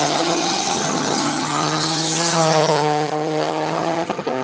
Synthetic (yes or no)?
yes